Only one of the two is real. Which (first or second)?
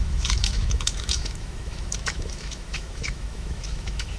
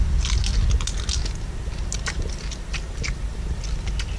second